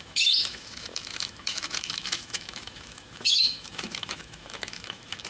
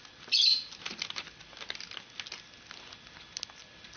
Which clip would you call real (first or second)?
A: second